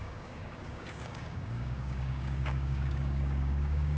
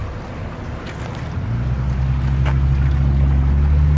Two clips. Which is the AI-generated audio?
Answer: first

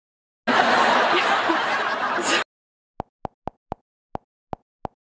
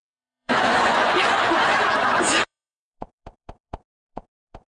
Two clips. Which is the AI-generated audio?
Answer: second